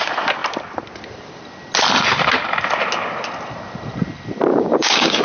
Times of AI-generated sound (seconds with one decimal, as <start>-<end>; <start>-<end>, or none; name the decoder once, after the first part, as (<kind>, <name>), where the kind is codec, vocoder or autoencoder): 4.5-5.2 (codec, DAC)